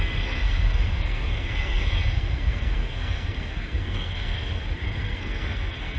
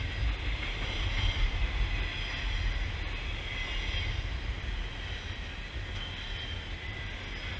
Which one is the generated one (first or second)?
first